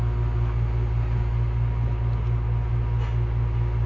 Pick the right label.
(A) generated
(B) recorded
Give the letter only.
B